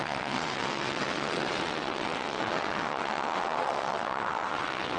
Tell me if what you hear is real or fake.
fake